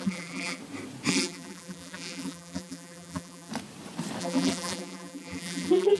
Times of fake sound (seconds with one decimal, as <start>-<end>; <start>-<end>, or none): 0.0-0.6; 1.1-3.5; 4.2-6.0